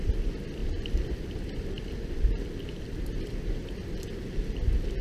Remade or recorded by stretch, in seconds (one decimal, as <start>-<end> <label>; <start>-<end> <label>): 0.0-5.0 recorded